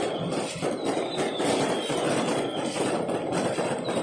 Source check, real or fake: real